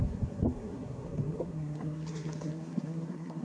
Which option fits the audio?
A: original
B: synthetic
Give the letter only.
B